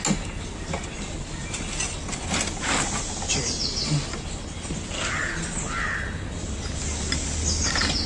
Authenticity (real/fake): real